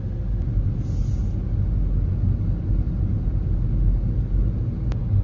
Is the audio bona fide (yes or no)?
yes